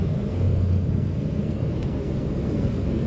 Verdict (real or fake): fake